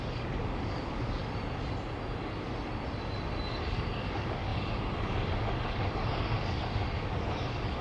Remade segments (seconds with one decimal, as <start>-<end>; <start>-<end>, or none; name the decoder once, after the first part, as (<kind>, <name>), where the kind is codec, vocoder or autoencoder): 0.0-1.2 (codec, DAC); 3.5-7.8